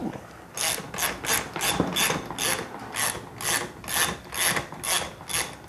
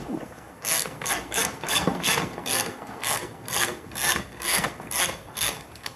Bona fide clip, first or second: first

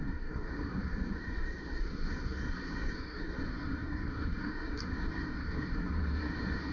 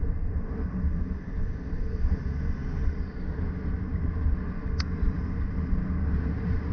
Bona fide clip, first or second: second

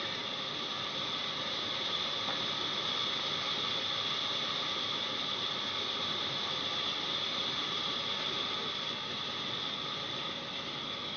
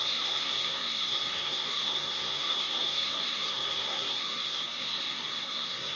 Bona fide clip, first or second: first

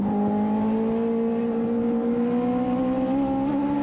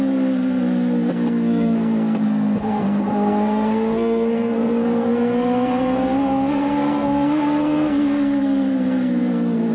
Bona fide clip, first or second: first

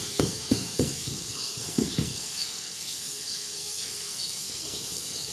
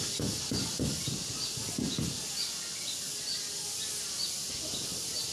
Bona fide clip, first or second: second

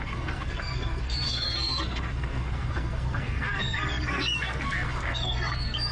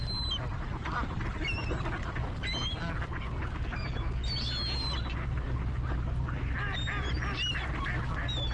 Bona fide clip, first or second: second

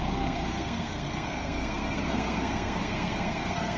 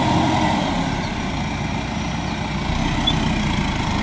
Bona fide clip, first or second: second